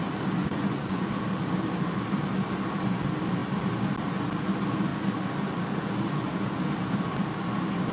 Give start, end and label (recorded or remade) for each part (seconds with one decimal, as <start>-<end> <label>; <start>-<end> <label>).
0.0-0.4 recorded; 0.4-1.1 remade; 1.1-7.9 recorded